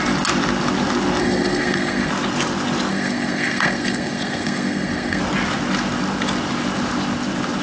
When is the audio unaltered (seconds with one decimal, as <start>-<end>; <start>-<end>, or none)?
0.0-1.2; 2.1-2.9; 5.2-7.6